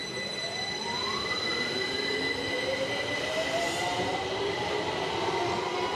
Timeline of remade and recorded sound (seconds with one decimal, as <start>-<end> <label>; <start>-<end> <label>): 0.0-1.0 recorded; 1.0-4.6 remade; 4.6-6.0 recorded